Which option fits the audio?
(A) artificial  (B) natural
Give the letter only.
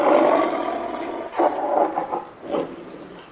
B